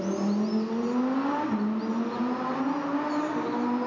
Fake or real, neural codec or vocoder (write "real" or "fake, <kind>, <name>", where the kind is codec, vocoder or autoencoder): real